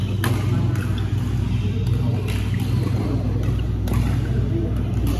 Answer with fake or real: real